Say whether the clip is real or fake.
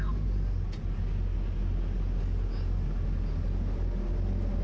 real